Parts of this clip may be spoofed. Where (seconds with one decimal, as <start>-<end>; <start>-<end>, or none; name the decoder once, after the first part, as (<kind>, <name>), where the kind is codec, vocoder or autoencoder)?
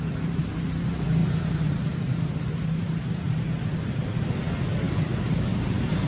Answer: 1.2-3.9 (vocoder, BigVGAN v2); 5.5-6.1